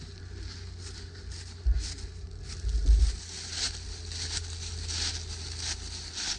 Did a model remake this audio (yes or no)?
no